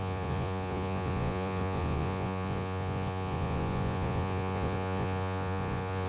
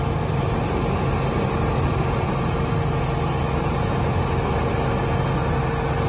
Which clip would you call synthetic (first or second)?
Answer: first